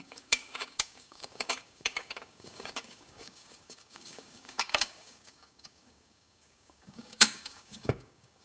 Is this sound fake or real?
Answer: fake